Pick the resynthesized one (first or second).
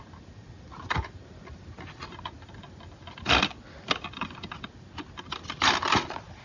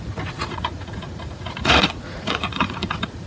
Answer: second